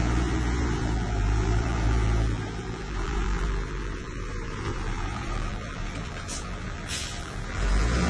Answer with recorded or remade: remade